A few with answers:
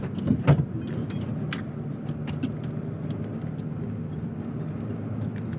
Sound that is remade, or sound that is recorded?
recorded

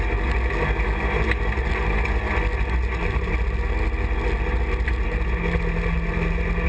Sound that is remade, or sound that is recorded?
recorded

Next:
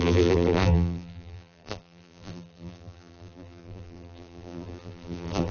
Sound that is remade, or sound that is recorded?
remade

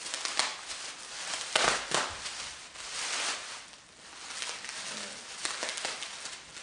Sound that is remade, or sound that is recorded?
recorded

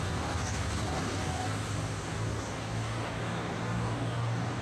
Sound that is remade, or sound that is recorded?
remade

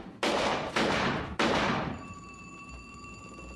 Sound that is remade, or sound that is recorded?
remade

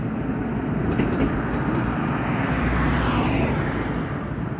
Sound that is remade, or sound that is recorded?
recorded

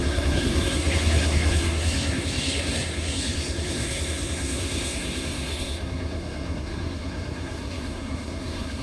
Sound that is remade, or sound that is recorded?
remade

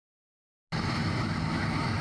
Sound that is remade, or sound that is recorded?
recorded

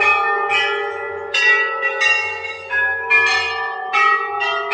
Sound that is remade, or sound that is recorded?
recorded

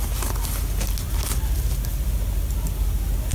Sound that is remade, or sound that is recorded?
recorded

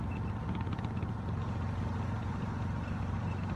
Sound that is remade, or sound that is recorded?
recorded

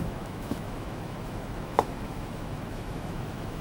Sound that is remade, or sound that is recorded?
remade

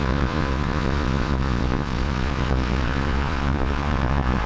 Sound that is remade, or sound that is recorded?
remade